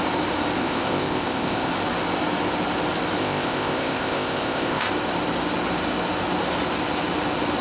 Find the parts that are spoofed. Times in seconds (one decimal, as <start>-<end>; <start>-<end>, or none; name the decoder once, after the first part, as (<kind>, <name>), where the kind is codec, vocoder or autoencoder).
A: 0.6-1.7 (codec, ZipCodec); 3.2-4.9